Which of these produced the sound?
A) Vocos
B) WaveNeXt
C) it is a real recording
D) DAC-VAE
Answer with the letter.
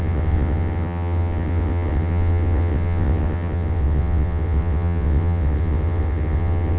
B